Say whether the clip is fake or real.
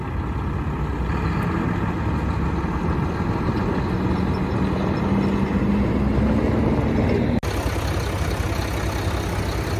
real